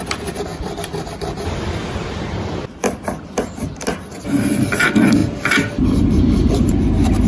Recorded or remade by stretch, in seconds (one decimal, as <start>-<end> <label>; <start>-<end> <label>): 0.0-0.5 recorded; 0.5-3.6 remade; 3.6-7.3 recorded